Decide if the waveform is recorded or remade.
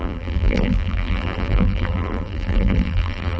remade